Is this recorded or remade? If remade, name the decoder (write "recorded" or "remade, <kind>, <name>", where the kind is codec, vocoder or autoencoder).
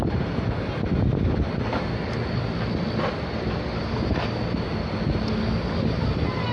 recorded